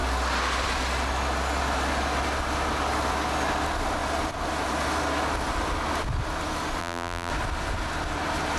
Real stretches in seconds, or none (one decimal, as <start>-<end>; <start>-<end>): 0.0-6.8; 7.3-8.6